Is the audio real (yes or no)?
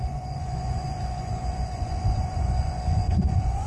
no